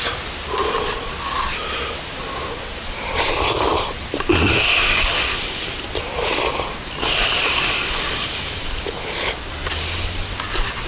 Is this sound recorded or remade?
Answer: recorded